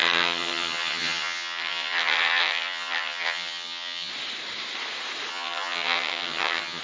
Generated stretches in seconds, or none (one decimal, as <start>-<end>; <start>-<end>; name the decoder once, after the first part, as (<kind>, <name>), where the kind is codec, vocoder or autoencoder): 0.0-4.1 (vocoder, HiFi-GAN); 5.3-6.8